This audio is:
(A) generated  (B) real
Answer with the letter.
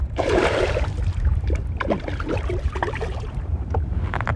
A